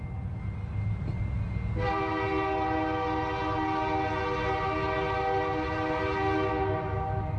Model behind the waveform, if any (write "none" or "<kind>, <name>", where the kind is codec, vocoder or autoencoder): none